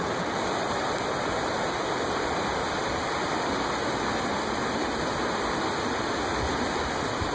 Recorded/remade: recorded